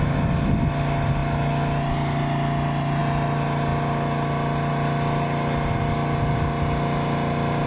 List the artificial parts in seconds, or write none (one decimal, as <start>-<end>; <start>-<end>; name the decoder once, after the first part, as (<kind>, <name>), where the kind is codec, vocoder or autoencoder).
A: none